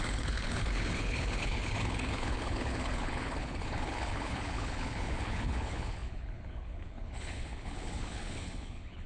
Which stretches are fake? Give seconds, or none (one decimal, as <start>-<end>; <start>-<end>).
0.0-9.1